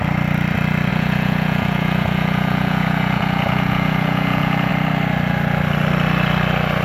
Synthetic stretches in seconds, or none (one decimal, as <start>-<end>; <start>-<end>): 0.9-4.7

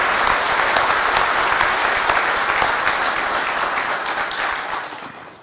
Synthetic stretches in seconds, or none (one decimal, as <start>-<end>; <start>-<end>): none

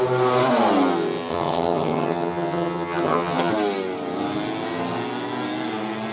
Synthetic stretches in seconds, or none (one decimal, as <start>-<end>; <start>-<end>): 1.3-3.5

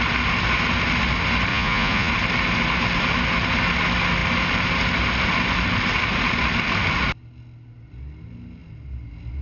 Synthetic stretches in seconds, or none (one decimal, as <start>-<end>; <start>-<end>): 1.5-2.1

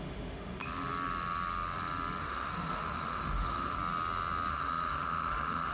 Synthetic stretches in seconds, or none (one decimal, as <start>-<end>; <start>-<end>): 0.0-0.6; 2.2-3.8; 4.5-5.7

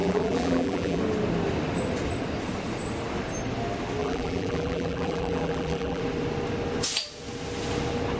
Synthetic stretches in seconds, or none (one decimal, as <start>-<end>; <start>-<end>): 0.0-1.0; 4.0-6.0